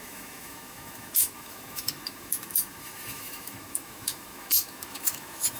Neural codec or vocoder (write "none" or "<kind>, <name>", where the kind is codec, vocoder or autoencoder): autoencoder, DAC-VAE